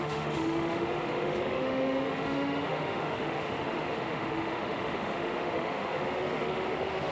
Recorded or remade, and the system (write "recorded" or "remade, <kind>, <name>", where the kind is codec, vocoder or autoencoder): remade, autoencoder, DAC-VAE